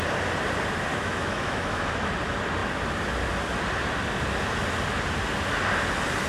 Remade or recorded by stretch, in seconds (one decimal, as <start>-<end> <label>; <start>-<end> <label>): 0.0-0.9 recorded; 0.9-2.1 remade; 2.1-6.3 recorded